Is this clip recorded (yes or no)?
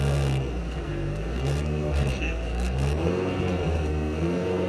no